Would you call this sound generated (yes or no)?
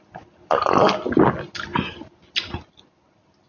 no